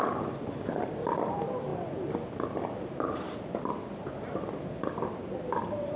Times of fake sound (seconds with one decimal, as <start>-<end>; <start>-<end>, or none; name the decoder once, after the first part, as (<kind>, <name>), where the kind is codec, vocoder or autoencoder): none